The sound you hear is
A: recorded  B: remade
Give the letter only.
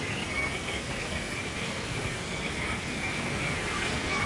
B